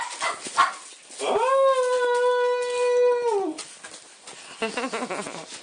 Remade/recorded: recorded